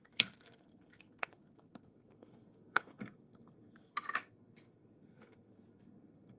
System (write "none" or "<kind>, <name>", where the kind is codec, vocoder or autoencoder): codec, SNAC